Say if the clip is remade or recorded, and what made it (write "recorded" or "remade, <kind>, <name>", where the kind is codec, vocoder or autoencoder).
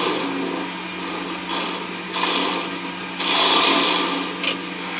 recorded